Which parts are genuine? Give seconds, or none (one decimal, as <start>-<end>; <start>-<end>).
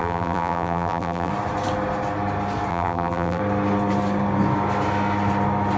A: 1.3-2.7; 3.4-5.8